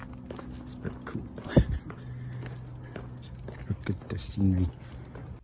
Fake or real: real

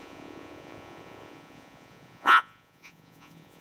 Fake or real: fake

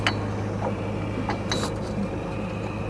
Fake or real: real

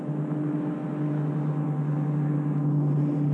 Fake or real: real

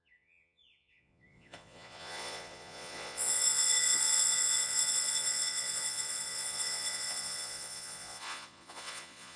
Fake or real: fake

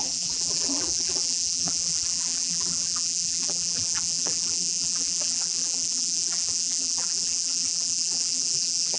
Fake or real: fake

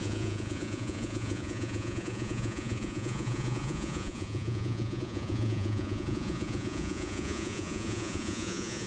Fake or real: fake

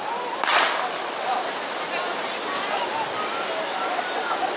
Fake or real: real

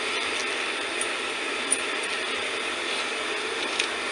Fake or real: real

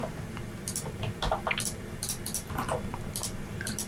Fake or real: real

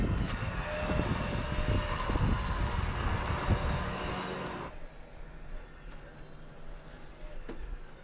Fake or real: real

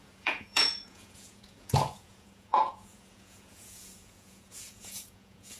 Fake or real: fake